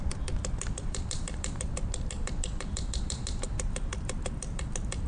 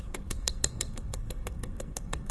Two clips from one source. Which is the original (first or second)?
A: first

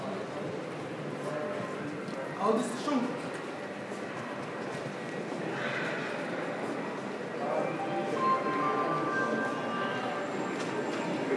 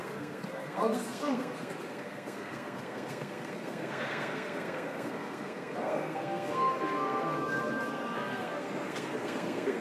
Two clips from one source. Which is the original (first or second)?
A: first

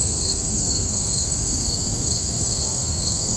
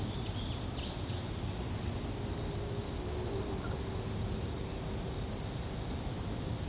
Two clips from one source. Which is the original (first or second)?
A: second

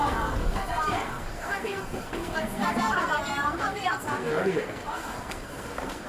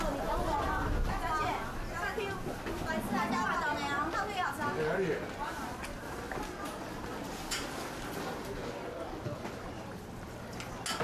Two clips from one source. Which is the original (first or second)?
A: second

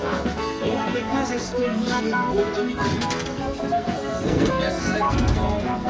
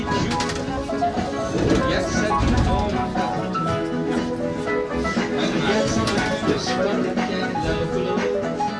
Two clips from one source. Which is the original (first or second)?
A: second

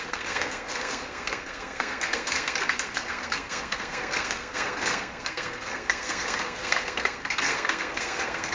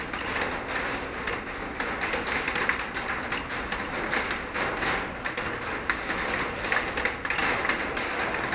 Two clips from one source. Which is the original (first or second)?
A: second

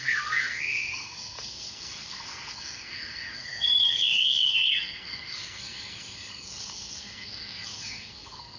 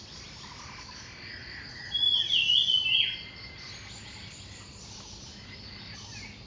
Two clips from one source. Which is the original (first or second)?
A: second